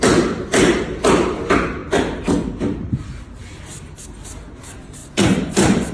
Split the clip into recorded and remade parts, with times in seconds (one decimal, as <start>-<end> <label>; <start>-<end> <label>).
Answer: 0.0-5.0 recorded; 5.0-5.5 remade; 5.5-5.9 recorded